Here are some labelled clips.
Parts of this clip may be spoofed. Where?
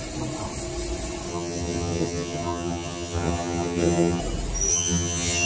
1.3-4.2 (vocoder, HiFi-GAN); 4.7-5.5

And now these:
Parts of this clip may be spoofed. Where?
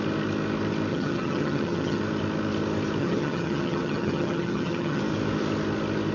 0.9-2.0 (vocoder, HiFi-GAN); 3.0-5.0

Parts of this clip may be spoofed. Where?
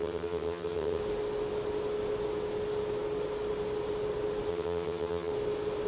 0.0-1.0 (vocoder, HiFi-GAN); 4.5-5.3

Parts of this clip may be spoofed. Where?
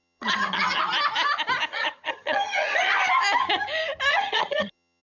0.0-0.8 (vocoder, HiFi-GAN); 1.7-3.1; 4.1-5.0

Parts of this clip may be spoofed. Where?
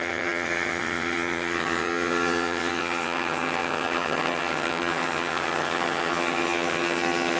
0.0-7.4 (vocoder, HiFi-GAN)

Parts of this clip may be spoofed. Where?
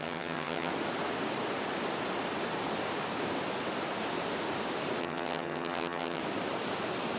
0.0-0.7 (vocoder, HiFi-GAN); 5.0-6.2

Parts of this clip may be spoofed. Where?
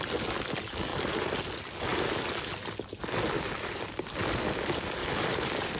none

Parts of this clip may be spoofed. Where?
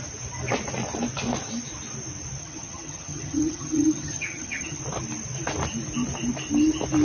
2.4-4.8 (vocoder, HiFi-GAN)